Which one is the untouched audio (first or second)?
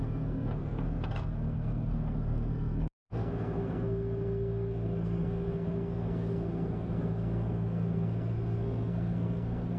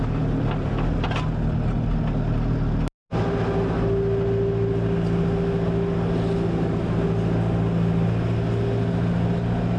second